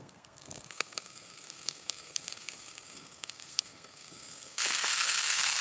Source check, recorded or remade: remade